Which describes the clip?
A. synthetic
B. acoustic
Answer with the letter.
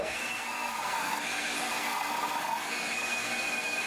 A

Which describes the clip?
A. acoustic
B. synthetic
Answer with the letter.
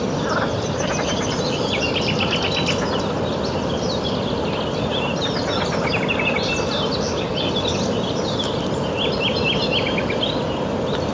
A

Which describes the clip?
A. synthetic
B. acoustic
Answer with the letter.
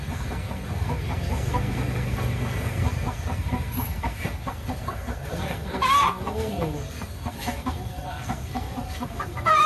A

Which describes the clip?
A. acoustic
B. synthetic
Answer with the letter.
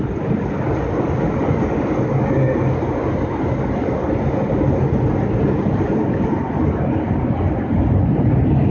A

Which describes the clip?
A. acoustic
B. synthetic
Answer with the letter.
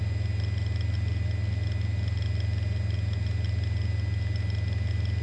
A